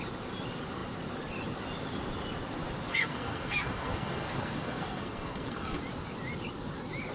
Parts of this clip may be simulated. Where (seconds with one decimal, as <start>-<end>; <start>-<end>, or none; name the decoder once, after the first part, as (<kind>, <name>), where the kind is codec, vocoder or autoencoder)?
2.9-5.8 (codec, SNAC)